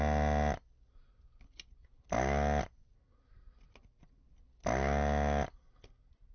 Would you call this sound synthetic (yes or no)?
no